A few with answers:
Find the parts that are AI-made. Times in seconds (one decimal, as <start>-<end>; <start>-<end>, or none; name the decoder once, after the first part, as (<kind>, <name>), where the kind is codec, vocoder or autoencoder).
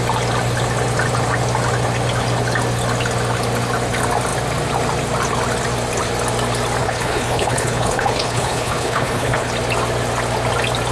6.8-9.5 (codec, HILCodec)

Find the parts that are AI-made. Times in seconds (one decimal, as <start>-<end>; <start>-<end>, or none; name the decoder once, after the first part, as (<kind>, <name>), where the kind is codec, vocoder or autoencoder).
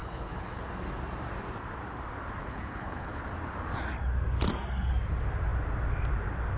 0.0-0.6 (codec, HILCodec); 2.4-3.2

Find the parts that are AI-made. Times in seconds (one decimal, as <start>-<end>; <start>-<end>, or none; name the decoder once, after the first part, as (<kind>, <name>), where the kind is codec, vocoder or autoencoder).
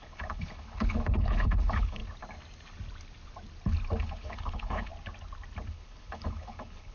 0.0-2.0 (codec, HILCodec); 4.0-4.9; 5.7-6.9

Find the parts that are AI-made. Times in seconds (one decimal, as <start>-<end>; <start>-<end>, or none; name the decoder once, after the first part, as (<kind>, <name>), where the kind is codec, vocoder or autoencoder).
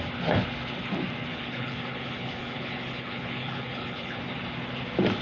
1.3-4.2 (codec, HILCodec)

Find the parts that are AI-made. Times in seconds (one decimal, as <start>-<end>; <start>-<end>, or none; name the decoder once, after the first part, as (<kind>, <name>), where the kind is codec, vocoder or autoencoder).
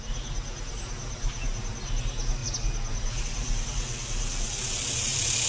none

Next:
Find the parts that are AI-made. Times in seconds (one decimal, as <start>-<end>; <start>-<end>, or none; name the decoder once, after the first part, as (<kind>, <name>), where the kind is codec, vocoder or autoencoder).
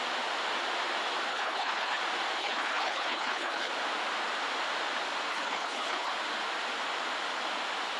1.3-2.0 (codec, HILCodec); 2.4-3.7; 5.3-6.1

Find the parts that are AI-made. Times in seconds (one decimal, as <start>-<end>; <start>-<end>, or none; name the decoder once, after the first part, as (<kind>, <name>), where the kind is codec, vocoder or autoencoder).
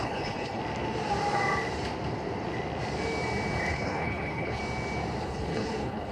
0.0-0.6 (codec, HILCodec); 3.7-4.6; 5.2-6.1